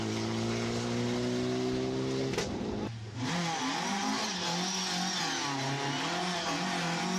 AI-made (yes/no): no